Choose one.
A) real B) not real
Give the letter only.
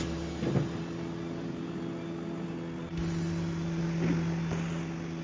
A